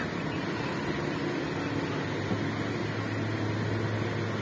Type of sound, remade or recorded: recorded